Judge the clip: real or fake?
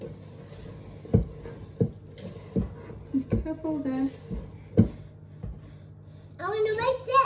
real